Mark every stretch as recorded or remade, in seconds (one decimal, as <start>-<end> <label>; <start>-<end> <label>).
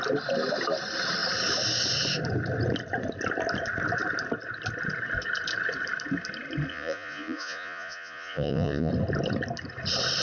0.0-6.7 recorded; 6.7-8.9 remade; 8.9-10.2 recorded